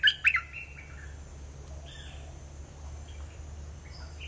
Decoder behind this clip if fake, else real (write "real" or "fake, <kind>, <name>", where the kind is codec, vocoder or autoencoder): real